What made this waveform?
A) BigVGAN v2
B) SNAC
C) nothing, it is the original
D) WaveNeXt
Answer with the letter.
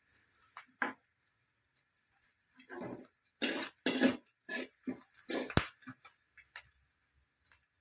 C